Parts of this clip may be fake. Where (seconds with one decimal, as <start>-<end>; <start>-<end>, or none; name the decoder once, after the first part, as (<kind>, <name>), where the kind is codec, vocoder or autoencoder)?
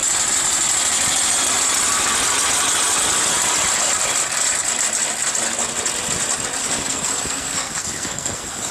6.6-8.7 (codec, SNAC)